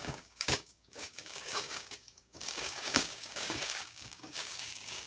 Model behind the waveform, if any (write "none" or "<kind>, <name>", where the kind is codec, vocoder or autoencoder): codec, DAC